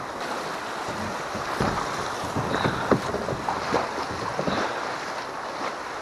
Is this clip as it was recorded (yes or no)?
yes